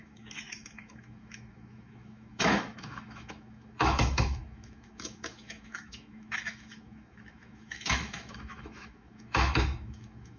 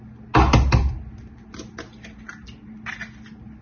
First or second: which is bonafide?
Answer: second